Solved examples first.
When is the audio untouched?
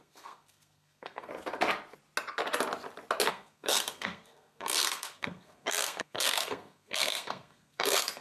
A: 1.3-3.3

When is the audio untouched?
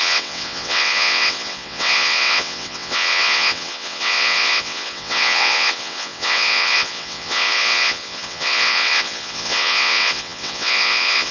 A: none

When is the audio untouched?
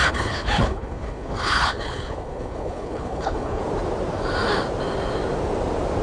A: 3.6-6.0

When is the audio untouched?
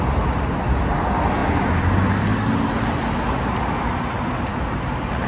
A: 0.0-5.3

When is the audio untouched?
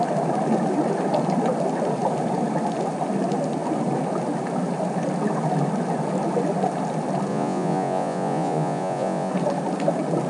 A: 0.0-7.3; 9.3-10.3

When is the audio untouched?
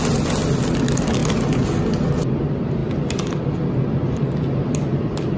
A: 0.0-5.4